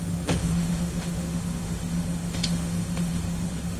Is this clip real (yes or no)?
no